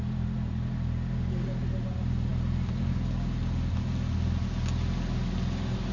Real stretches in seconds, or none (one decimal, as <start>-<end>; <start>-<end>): 0.0-5.9